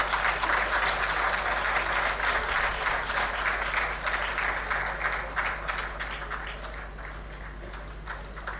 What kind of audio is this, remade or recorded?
recorded